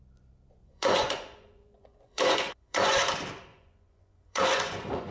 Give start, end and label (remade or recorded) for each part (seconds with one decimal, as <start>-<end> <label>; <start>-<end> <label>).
0.0-0.6 recorded; 0.6-3.0 remade; 3.0-3.5 recorded; 3.5-5.1 remade